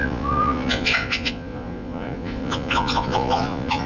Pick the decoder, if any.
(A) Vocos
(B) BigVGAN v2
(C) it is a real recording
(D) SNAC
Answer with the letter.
A